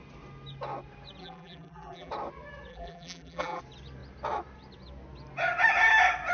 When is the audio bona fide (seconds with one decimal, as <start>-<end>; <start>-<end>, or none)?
0.0-1.2; 2.1-2.7; 3.6-6.3